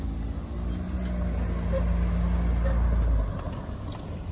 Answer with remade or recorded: recorded